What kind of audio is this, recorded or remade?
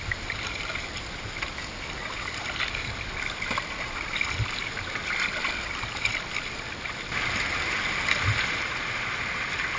recorded